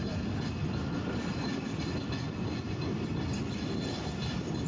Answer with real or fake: real